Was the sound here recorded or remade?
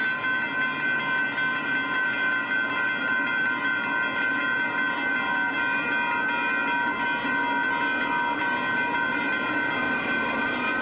recorded